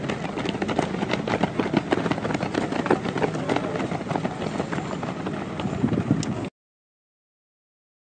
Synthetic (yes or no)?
no